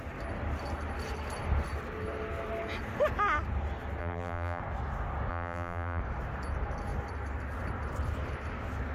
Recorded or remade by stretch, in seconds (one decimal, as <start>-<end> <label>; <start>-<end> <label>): 0.0-4.0 recorded; 4.0-4.6 remade; 4.6-5.3 recorded; 5.3-6.0 remade; 6.0-8.9 recorded